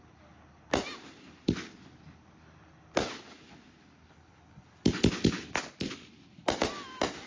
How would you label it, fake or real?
real